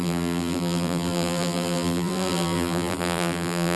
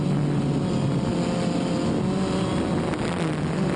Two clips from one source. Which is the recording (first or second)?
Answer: second